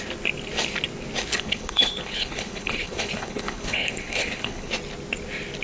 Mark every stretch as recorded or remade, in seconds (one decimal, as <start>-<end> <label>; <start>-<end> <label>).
0.0-1.3 recorded; 1.3-4.7 remade; 4.7-5.6 recorded